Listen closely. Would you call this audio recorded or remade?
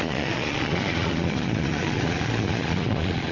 remade